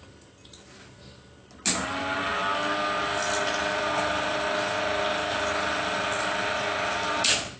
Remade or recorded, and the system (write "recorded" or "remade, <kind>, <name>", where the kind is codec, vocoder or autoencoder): recorded